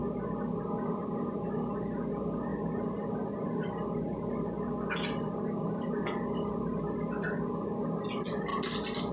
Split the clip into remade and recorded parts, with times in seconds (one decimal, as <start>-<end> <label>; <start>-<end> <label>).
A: 0.0-9.1 recorded